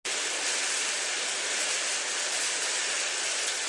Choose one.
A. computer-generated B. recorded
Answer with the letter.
B